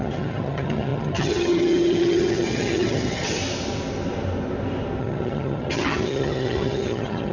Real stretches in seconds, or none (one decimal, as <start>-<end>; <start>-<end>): 3.4-5.0